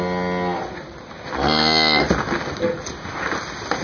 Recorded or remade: recorded